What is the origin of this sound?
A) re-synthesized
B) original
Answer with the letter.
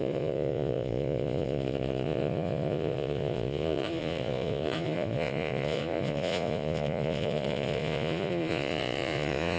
A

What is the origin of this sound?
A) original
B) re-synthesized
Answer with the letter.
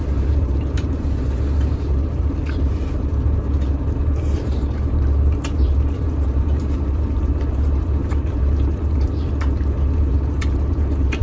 B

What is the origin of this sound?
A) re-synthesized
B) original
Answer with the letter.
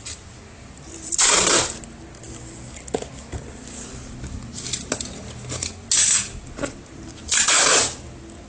B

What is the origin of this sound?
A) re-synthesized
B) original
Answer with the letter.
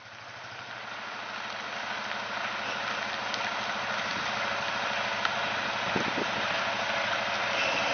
B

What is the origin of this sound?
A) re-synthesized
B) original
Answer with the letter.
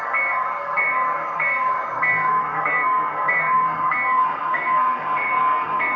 A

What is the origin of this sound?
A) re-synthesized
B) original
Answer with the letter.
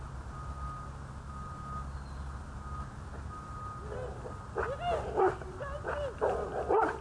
B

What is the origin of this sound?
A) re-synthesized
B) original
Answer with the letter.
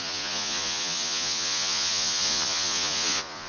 A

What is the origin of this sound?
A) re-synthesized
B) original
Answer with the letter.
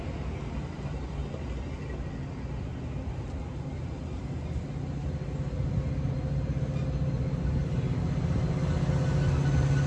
B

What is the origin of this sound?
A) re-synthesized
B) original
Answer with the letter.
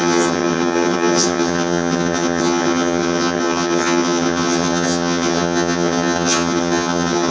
A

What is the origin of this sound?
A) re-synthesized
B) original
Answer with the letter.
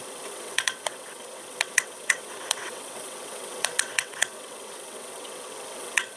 A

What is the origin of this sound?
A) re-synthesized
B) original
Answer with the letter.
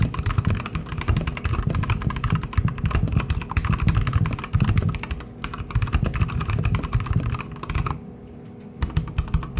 B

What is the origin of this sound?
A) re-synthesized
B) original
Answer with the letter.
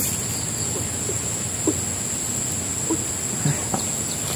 B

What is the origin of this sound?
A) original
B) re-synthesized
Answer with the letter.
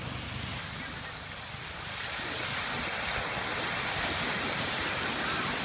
A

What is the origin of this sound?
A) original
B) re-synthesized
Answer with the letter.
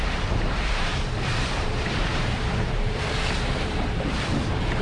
B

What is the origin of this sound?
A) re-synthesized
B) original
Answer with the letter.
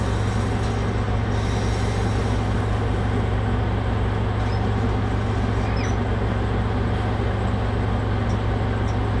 B